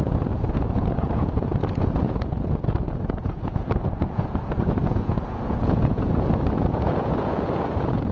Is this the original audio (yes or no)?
no